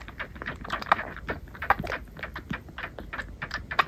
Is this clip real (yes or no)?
no